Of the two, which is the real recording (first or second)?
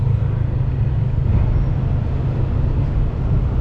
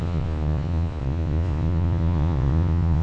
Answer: first